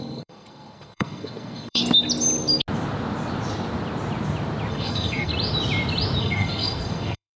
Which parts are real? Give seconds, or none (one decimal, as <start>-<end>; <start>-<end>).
1.8-4.7; 5.3-6.2